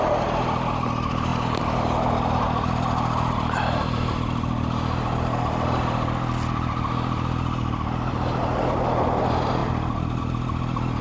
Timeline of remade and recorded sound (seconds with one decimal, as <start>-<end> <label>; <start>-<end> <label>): 0.0-11.0 recorded